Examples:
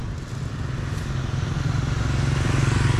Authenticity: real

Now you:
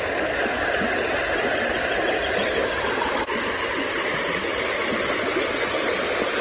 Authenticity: real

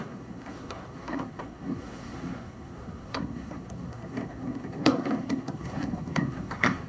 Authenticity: fake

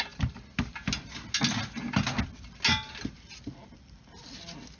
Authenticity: real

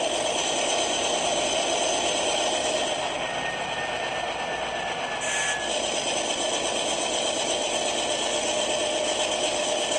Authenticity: real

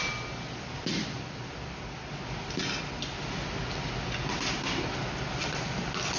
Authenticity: real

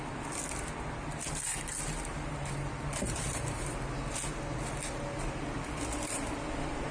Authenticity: real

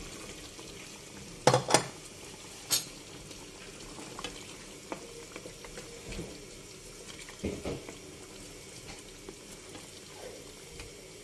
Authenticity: real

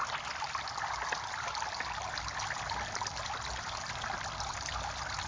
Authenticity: real